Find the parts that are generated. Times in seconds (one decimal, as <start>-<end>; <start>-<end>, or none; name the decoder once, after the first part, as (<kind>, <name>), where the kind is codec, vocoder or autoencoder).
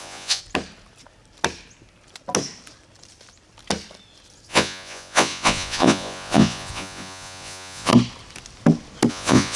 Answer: 0.0-0.4 (vocoder, Vocos); 4.5-7.9; 9.1-9.6